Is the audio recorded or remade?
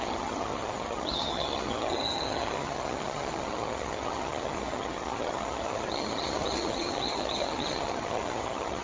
remade